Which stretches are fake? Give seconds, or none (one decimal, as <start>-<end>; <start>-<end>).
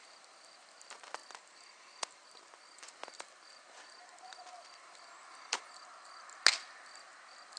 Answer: none